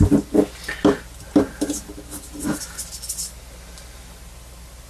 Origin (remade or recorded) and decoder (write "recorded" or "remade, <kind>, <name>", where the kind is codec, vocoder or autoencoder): recorded